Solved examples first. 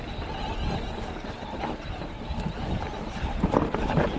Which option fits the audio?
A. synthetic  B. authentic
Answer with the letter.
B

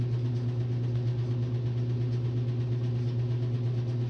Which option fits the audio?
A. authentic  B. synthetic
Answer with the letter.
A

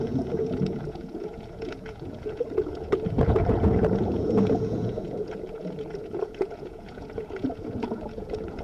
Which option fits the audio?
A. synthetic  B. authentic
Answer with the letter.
A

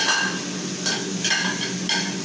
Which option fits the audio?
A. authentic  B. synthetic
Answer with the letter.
A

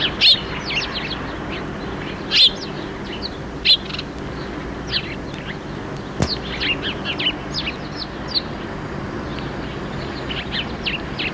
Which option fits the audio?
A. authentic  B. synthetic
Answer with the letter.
A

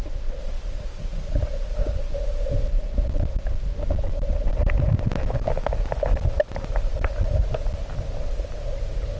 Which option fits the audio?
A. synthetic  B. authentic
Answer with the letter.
B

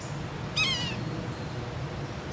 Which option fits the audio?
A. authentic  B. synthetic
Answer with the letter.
A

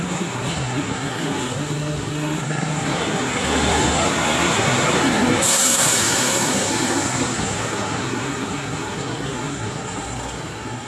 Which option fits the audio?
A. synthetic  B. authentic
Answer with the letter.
A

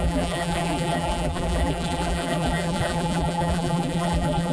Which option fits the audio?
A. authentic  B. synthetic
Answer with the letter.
B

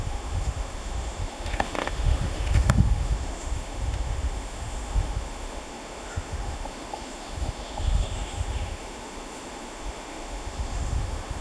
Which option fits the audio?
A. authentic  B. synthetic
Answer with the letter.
B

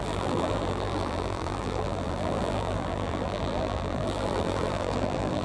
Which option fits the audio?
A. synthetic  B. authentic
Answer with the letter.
A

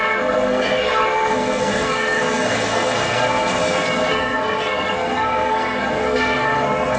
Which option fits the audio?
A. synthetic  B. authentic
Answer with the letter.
A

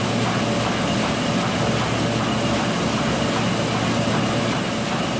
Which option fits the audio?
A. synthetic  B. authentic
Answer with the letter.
B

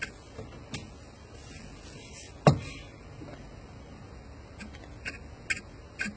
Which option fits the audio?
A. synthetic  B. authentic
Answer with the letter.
B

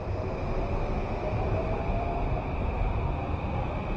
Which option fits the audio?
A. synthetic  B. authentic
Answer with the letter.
A